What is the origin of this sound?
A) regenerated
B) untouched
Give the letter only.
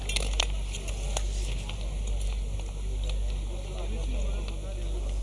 B